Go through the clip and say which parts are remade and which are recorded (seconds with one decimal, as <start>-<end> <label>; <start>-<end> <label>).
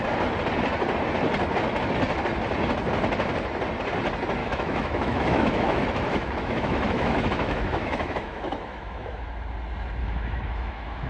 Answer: 0.0-4.4 recorded; 4.4-9.3 remade; 9.3-10.0 recorded; 10.0-11.1 remade